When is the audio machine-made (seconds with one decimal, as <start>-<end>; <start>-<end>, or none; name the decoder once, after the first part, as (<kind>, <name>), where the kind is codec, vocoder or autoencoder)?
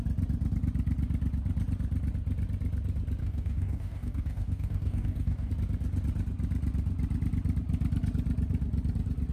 3.2-5.5 (codec, DAC)